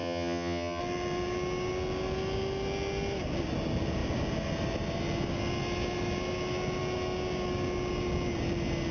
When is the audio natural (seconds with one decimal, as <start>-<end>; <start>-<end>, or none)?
0.8-8.9